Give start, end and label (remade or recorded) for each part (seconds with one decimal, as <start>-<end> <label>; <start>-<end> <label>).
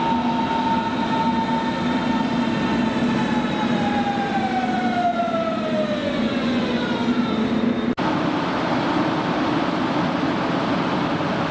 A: 0.0-6.0 recorded; 6.0-6.8 remade; 6.8-11.5 recorded